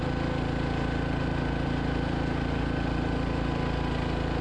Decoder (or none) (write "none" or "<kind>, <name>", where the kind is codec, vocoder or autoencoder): none